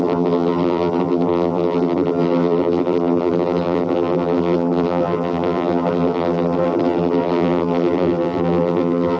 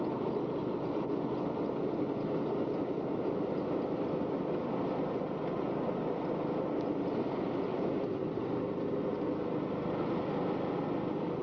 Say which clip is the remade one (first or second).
first